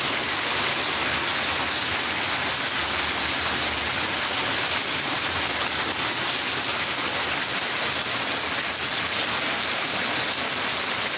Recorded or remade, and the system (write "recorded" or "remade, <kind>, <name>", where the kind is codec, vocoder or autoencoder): recorded